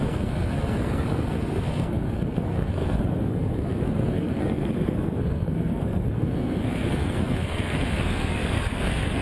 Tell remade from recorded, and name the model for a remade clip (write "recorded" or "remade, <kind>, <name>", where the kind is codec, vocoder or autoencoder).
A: remade, codec, SNAC